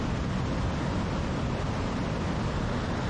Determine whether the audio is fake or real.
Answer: fake